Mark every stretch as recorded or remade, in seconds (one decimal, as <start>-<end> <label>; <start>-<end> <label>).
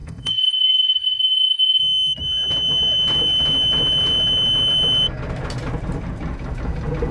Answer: 0.0-1.8 remade; 1.8-7.1 recorded